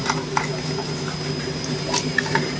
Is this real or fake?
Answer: real